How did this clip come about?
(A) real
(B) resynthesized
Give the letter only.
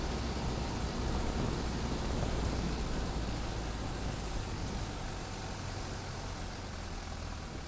A